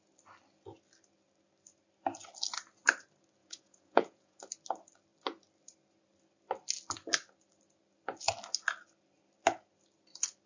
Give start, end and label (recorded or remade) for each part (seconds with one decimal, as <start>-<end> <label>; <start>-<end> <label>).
0.0-3.4 recorded; 3.4-4.4 remade; 4.4-10.5 recorded